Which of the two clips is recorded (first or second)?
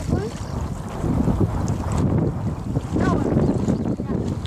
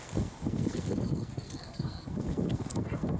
first